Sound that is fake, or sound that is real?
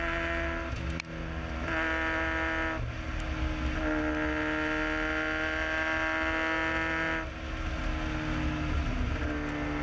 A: real